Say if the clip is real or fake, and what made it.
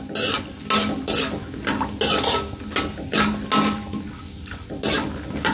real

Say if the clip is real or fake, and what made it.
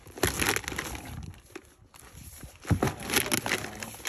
real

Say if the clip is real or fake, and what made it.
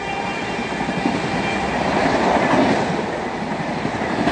real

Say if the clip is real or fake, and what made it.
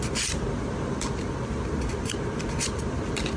real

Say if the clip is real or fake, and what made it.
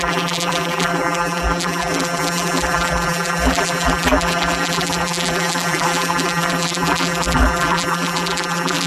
fake, vocoder, BigVGAN v2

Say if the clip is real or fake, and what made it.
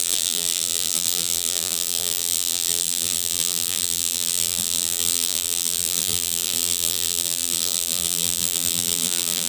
fake, vocoder, BigVGAN v2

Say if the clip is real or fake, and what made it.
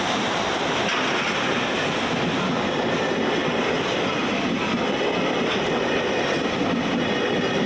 real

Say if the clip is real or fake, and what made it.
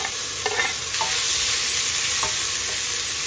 real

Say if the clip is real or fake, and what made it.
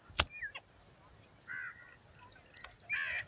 real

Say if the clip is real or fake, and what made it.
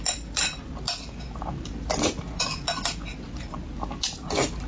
real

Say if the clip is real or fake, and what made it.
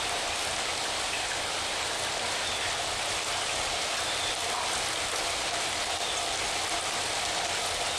real